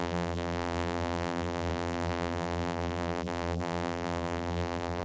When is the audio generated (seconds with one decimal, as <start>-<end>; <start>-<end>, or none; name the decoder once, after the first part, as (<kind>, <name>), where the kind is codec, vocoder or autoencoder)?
0.0-5.0 (vocoder, BigVGAN v2)